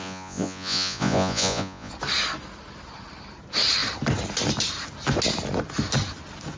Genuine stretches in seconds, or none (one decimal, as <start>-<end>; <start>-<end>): 1.9-6.6